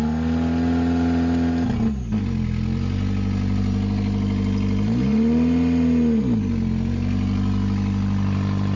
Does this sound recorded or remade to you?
recorded